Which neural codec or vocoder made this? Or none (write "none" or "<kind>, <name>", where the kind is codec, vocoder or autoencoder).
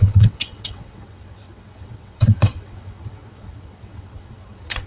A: vocoder, WaveNeXt